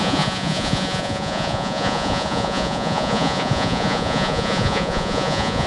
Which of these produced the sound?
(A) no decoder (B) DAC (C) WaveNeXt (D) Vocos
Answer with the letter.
D